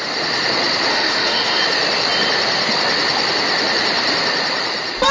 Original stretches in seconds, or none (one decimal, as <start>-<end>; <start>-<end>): 0.0-0.9; 1.6-5.1